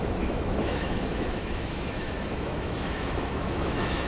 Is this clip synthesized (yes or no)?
yes